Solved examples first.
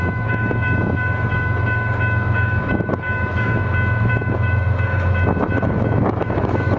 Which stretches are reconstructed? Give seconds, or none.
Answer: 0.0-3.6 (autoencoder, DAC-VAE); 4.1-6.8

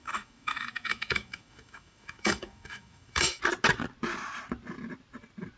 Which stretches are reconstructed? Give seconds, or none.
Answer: 0.0-3.4 (autoencoder, DAC-VAE)

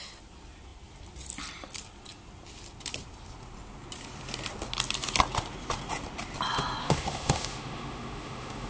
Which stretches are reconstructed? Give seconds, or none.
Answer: 6.8-8.7 (autoencoder, DAC-VAE)